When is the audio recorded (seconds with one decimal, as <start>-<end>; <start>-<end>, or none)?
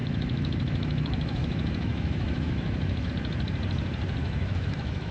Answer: 3.1-4.2